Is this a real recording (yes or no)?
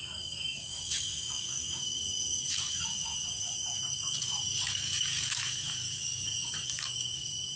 no